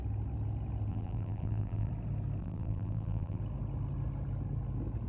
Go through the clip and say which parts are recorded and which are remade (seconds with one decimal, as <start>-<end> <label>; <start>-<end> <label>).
0.0-0.9 recorded; 0.9-1.9 remade; 1.9-2.4 recorded; 2.4-3.4 remade; 3.4-5.1 recorded